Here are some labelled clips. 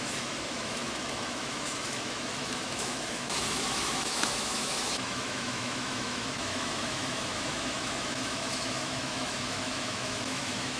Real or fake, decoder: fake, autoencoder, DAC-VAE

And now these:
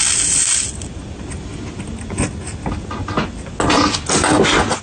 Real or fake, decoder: real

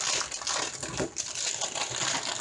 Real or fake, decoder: real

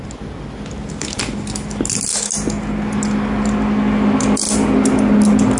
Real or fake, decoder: real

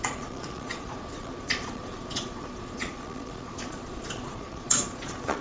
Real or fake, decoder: fake, vocoder, Vocos